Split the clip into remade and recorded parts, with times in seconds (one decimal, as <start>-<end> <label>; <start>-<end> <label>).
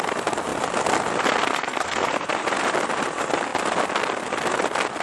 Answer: 0.0-1.5 recorded; 1.5-2.3 remade; 2.3-5.0 recorded